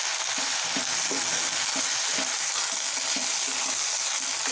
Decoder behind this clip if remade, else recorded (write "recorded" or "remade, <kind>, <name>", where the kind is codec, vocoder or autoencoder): recorded